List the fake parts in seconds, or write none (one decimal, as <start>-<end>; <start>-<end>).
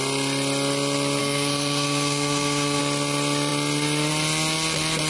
1.2-2.8